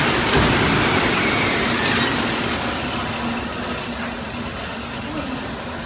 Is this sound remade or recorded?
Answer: recorded